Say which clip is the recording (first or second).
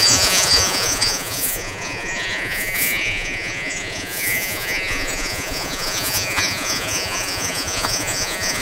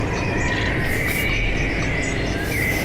second